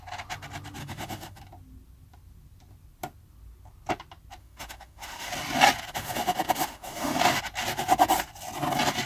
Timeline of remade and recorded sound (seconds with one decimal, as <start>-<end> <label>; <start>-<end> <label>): 0.0-0.8 recorded; 0.8-1.4 remade; 1.4-4.4 recorded; 4.4-5.3 remade; 5.3-5.9 recorded; 5.9-7.4 remade; 7.4-9.1 recorded